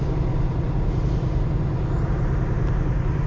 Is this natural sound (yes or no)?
yes